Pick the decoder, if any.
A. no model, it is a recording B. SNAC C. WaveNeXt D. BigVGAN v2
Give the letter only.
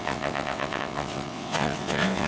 C